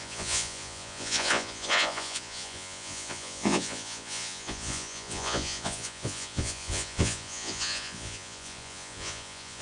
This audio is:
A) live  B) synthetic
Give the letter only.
B